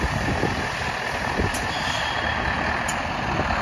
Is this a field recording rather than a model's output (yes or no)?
yes